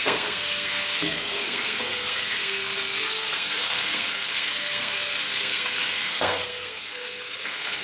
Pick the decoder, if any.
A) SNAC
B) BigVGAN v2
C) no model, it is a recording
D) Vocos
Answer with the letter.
A